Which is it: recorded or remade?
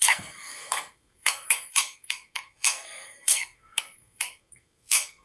remade